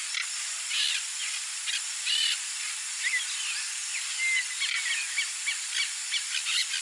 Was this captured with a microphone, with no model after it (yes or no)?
yes